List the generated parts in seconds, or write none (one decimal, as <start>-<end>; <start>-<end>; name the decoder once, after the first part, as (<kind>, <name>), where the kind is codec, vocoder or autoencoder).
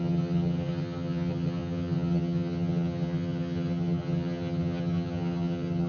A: 0.0-5.9 (vocoder, HiFi-GAN)